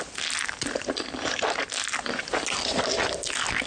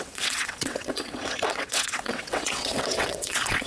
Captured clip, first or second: first